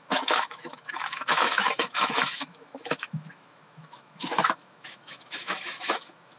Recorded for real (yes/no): no